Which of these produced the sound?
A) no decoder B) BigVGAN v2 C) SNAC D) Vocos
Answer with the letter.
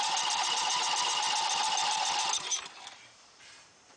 B